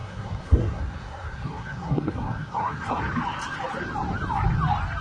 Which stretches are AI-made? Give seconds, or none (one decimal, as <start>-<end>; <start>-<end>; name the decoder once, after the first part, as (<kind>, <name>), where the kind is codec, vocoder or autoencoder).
0.0-3.0 (codec, SNAC)